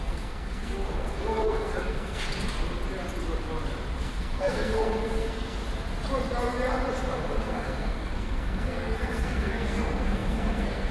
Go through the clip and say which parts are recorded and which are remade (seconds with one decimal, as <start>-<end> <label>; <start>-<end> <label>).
0.0-2.3 remade; 2.3-4.0 recorded; 4.0-5.6 remade; 5.6-7.4 recorded; 7.4-10.9 remade